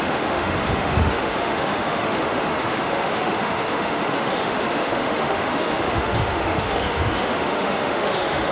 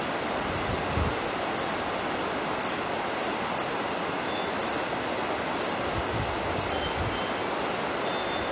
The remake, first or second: first